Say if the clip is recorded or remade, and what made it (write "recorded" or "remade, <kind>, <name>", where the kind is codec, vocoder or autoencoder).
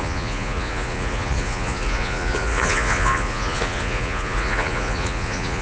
remade, vocoder, Vocos